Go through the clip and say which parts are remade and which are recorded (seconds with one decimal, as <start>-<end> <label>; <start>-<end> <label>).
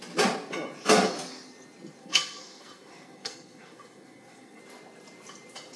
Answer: 0.0-2.0 recorded; 2.0-4.6 remade; 4.6-5.8 recorded